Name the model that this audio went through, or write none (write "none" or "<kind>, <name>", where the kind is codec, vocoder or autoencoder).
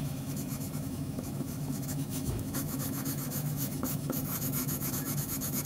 autoencoder, DAC-VAE